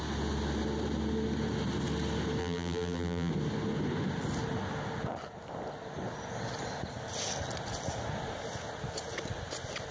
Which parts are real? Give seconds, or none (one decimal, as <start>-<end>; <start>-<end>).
0.0-2.4; 3.3-9.9